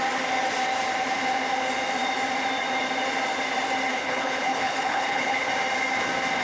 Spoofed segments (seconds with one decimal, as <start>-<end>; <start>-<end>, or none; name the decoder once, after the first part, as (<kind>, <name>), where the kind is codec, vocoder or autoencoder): 3.9-5.5 (codec, HILCodec)